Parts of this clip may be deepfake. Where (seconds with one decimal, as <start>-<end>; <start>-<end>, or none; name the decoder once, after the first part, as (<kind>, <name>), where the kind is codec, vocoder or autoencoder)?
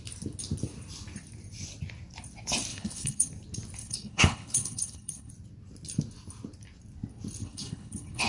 2.7-3.3 (codec, HILCodec); 3.8-5.3; 7.4-8.3